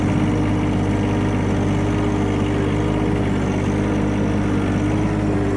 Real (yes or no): yes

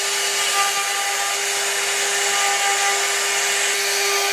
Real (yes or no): yes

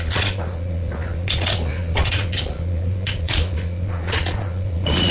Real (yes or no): no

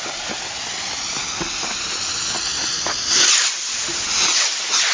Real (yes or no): yes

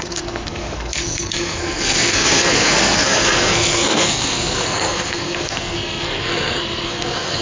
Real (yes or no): no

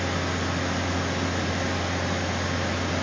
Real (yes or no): yes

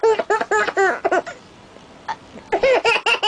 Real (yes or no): yes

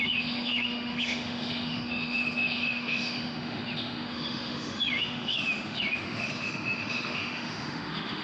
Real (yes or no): no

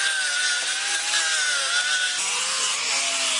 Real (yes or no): yes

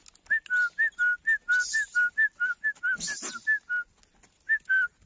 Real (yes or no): yes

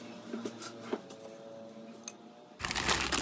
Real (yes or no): yes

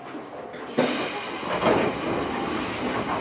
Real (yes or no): yes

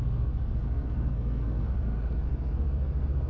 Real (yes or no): no